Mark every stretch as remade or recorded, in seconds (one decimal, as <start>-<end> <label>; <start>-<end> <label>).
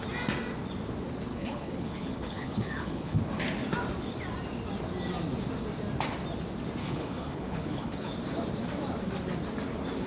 0.0-1.3 recorded; 1.3-3.2 remade; 3.2-6.8 recorded; 6.8-8.1 remade; 8.1-10.1 recorded